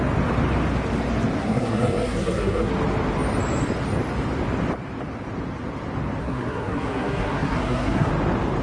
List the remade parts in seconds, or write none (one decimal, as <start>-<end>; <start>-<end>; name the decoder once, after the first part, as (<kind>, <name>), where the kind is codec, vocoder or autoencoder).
1.4-2.7 (codec, SNAC); 6.2-8.1